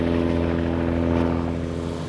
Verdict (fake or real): real